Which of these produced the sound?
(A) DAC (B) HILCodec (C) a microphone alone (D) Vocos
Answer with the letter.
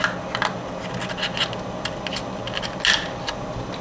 C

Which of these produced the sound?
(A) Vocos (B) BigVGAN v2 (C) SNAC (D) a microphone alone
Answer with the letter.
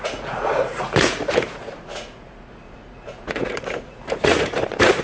A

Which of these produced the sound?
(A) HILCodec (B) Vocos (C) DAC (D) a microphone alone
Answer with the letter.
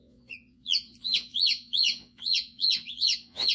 B